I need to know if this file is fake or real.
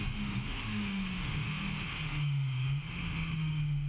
fake